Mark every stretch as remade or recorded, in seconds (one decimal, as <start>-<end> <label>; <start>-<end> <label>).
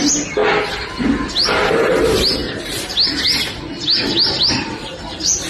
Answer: 0.0-5.5 recorded